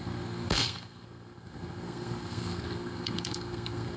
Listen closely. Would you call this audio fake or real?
fake